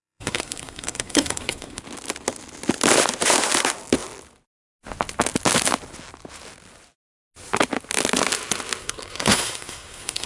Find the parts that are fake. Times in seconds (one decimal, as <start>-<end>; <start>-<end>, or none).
0.0-1.8; 8.8-10.3

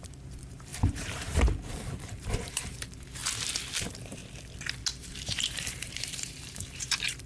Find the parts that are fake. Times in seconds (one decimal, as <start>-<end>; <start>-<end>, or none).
0.0-3.2; 3.8-4.2; 5.0-7.3

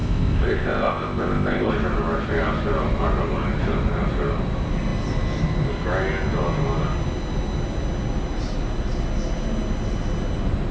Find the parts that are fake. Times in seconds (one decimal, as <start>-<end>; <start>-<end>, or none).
0.0-1.7

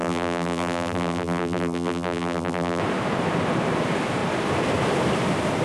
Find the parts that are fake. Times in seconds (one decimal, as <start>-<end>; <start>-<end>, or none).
0.0-2.8

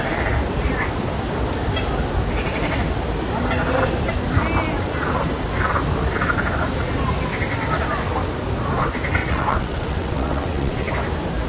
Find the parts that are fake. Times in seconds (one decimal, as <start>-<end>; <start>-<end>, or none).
9.2-10.9